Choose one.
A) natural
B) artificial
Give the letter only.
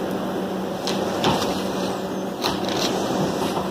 A